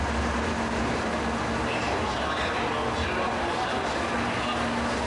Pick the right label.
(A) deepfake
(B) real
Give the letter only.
B